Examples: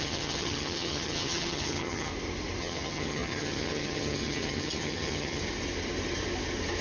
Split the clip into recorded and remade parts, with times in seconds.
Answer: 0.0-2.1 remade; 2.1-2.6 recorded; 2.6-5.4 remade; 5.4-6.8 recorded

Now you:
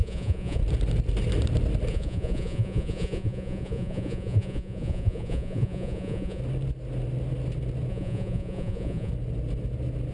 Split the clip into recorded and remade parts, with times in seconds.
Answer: 0.0-0.6 remade; 0.6-1.9 recorded; 1.9-6.4 remade; 6.4-7.9 recorded; 7.9-9.1 remade; 9.1-10.1 recorded

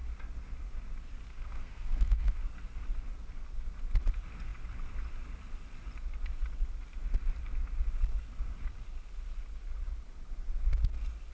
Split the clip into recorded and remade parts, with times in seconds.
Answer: 0.0-1.3 recorded; 1.3-2.4 remade; 2.4-11.3 recorded

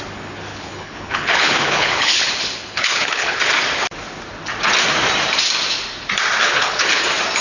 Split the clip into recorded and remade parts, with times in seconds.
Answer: 0.0-0.5 recorded; 0.5-3.4 remade; 3.4-6.4 recorded; 6.4-7.0 remade; 7.0-7.4 recorded

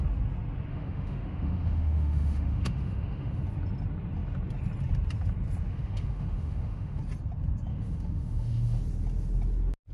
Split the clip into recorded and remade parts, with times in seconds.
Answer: 0.0-0.7 recorded; 0.7-3.4 remade; 3.4-5.7 recorded; 5.7-7.0 remade; 7.0-7.7 recorded; 7.7-8.8 remade; 8.8-9.9 recorded

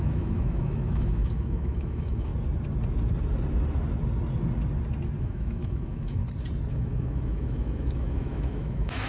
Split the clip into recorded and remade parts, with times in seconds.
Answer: 0.0-2.3 remade; 2.3-5.2 recorded; 5.2-6.2 remade; 6.2-6.7 recorded; 6.7-9.1 remade

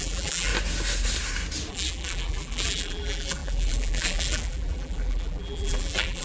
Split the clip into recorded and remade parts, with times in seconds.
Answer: 0.0-0.5 remade; 0.5-1.7 recorded; 1.7-6.2 remade